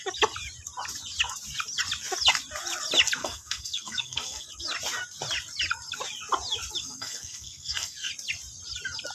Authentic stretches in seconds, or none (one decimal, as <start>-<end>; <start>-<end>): 0.0-3.2; 4.5-6.8; 8.1-9.1